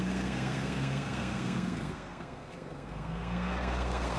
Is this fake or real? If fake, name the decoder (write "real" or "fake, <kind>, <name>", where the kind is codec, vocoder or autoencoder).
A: fake, codec, SNAC